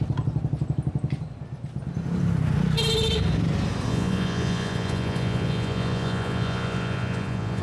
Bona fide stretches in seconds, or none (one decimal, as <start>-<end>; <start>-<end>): 0.0-3.9